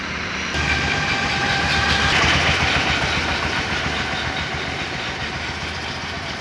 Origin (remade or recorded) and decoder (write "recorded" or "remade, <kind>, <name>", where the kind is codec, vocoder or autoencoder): recorded